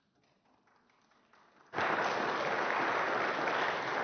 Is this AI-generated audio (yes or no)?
no